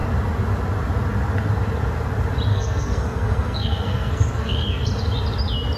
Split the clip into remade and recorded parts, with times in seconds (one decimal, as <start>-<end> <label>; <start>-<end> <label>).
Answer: 0.0-2.5 recorded; 2.5-4.9 remade; 4.9-5.8 recorded